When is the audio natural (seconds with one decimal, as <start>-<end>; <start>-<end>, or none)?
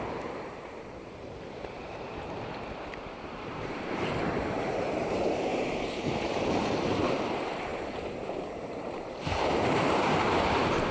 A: none